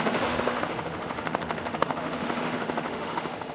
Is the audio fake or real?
fake